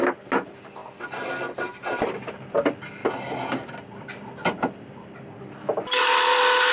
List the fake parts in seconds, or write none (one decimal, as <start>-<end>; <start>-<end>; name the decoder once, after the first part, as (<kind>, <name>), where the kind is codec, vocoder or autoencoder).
none